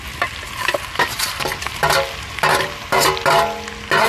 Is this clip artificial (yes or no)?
no